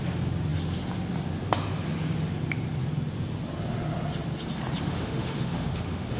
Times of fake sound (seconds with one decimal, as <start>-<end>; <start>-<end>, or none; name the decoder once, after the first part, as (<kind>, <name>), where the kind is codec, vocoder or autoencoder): 4.9-6.2 (autoencoder, DAC-VAE)